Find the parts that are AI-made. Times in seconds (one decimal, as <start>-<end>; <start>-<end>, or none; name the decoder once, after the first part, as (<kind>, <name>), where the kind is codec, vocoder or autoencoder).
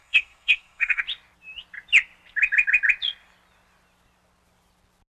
0.0-1.0 (codec, SNAC)